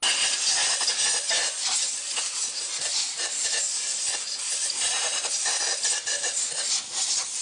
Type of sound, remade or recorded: recorded